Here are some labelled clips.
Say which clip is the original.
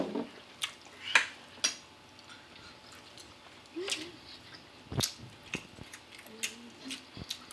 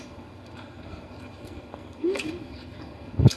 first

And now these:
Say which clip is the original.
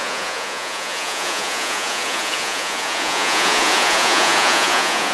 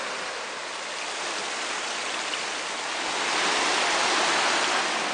second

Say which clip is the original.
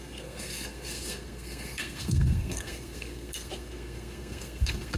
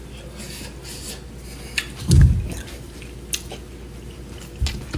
second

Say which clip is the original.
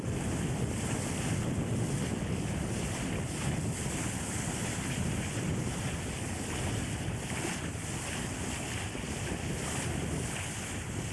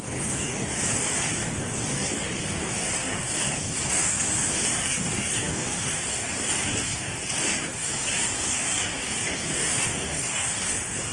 first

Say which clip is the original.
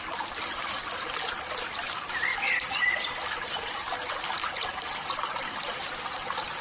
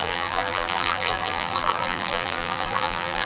first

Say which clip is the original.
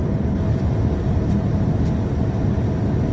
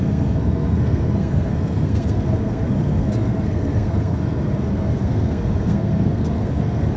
first